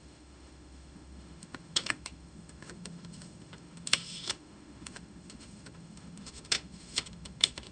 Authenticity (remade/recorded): remade